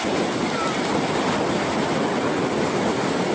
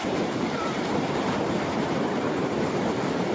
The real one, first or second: first